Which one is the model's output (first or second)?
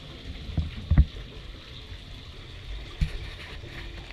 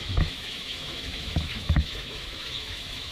second